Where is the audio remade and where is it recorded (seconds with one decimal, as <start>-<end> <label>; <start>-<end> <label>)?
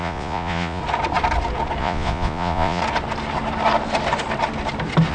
0.0-0.8 remade; 0.8-1.8 recorded; 1.8-2.8 remade; 2.8-5.1 recorded